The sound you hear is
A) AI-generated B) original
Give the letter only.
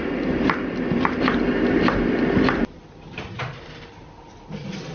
A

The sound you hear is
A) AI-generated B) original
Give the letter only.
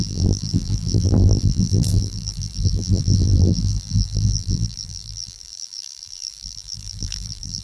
A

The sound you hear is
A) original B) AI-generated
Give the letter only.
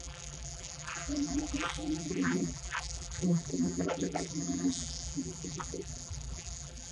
B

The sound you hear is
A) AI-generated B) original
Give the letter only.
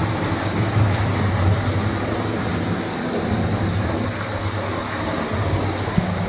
B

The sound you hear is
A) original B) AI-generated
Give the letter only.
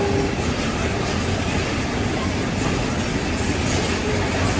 A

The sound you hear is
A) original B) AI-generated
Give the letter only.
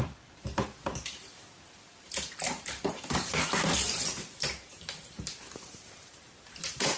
B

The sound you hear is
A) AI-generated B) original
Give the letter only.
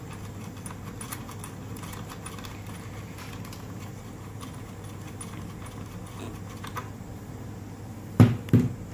B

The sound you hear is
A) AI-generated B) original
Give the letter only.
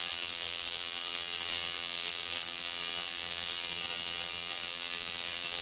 A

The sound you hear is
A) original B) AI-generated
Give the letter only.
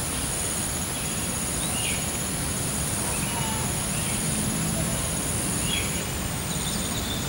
A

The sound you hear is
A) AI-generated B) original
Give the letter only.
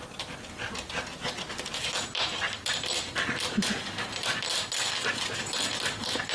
B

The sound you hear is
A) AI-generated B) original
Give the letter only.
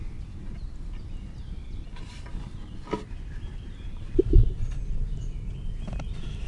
B